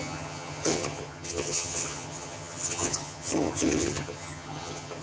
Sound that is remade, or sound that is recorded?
remade